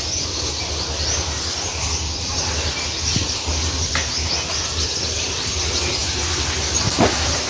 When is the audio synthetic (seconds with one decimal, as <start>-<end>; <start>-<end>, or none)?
none